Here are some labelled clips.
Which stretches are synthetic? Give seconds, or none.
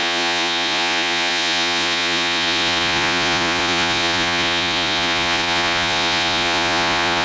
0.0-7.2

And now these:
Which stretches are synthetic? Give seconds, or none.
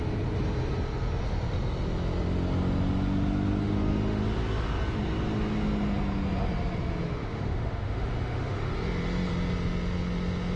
3.6-4.2; 7.2-8.7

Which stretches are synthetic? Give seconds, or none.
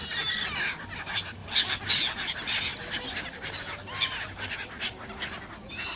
none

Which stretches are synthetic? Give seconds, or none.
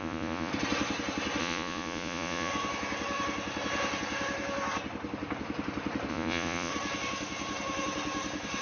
0.0-0.5; 1.4-2.5; 6.1-6.7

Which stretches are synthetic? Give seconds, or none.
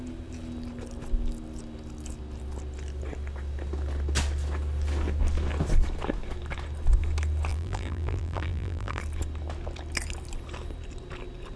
7.5-9.0